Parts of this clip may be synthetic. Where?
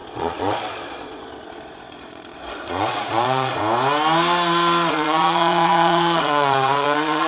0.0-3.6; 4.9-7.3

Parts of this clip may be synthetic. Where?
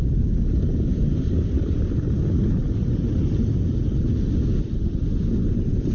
none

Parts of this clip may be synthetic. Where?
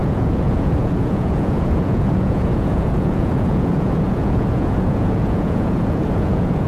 0.0-6.7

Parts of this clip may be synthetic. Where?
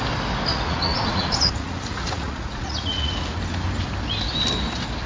0.5-3.1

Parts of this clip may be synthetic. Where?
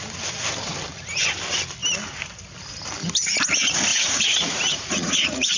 3.9-5.6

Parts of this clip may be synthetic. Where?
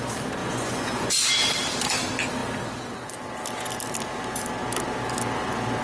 0.4-1.3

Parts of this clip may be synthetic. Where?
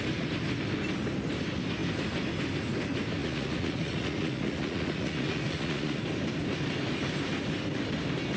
3.2-6.0